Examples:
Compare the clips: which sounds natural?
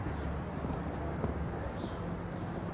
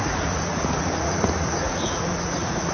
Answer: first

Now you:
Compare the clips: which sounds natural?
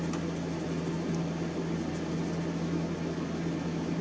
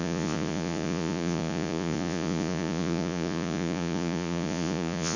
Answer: first